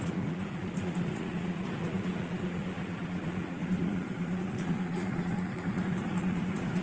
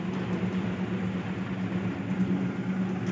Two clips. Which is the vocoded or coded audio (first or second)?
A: first